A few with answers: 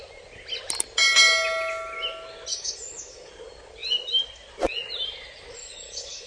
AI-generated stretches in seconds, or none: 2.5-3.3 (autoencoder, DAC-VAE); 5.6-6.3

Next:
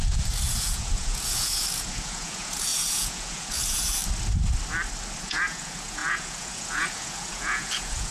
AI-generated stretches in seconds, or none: 0.0-4.0 (vocoder, Vocos); 5.2-8.1

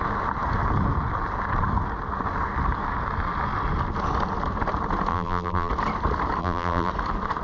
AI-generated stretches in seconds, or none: 5.1-5.7 (vocoder, BigVGAN v2); 6.4-6.9

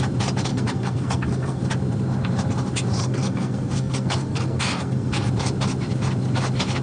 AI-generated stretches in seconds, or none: 0.5-1.6 (codec, SNAC); 3.0-5.3

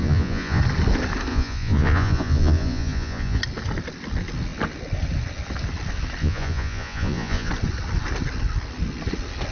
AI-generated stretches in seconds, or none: 0.0-0.6 (vocoder, Vocos); 1.3-3.4; 6.2-7.5